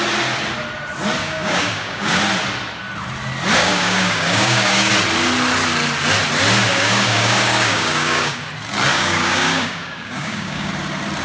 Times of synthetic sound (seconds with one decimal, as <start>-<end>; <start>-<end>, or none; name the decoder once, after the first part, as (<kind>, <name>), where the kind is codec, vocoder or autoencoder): 1.2-2.2 (codec, DAC); 3.6-4.9; 6.7-8.5; 8.9-10.7